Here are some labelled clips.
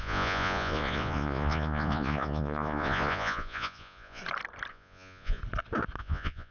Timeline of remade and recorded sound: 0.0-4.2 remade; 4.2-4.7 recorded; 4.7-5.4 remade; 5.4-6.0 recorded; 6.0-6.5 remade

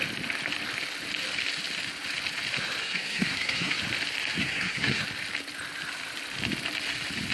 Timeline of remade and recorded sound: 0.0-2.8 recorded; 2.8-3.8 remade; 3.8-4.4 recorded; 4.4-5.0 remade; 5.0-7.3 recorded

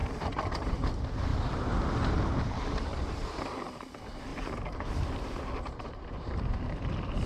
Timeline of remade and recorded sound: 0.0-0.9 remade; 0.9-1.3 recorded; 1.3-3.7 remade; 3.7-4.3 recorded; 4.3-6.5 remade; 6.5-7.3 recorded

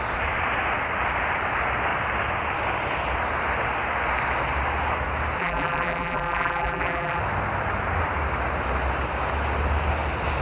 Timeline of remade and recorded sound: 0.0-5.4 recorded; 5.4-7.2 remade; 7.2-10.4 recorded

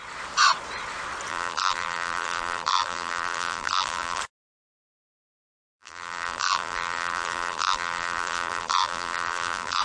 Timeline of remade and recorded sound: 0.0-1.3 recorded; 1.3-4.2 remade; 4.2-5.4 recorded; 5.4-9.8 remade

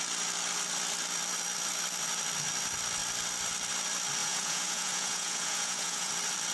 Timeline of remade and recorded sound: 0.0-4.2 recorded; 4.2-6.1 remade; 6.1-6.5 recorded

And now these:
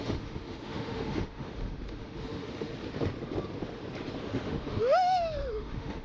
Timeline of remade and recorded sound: 0.0-2.7 remade; 2.7-4.2 recorded; 4.2-6.0 remade